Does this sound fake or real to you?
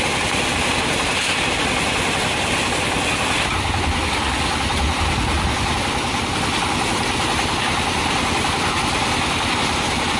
real